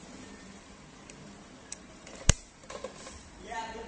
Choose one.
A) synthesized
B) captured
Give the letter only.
A